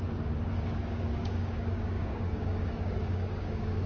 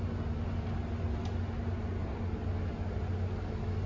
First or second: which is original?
second